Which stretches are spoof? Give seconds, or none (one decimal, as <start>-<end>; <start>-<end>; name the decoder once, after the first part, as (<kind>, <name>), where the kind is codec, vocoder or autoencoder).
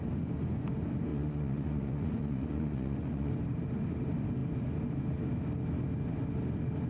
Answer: 1.1-3.3 (vocoder, Vocos)